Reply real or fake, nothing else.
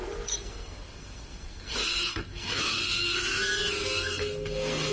fake